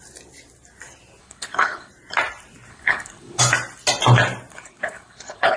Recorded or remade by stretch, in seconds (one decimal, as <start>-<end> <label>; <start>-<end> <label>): 0.0-1.2 recorded; 1.2-1.9 remade; 1.9-2.7 recorded; 2.7-3.4 remade; 3.4-4.5 recorded; 4.5-5.6 remade